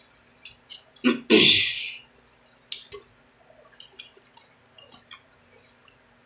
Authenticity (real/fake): real